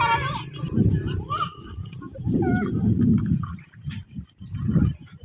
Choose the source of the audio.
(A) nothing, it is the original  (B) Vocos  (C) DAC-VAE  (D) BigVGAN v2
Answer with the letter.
D